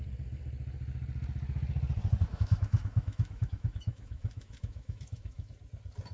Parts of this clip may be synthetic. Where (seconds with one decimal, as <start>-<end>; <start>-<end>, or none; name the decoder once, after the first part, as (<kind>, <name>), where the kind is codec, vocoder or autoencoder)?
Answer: 2.3-5.5 (autoencoder, DAC-VAE)